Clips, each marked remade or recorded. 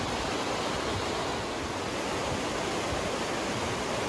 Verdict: recorded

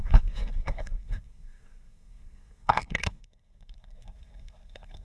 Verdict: remade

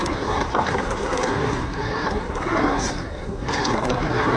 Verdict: remade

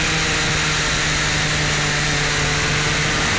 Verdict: recorded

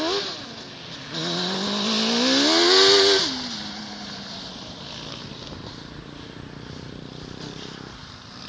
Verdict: recorded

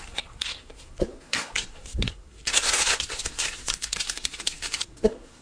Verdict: remade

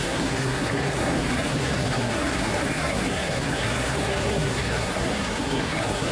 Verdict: remade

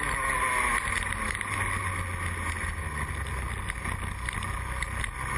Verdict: recorded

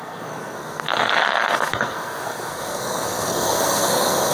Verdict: remade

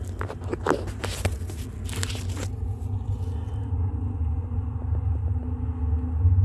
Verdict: recorded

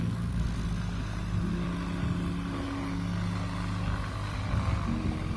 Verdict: recorded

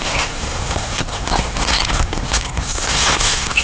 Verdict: remade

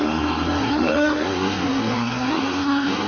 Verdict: remade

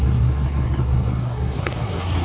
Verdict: remade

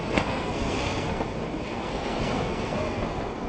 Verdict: remade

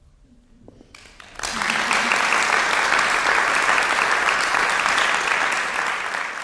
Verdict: recorded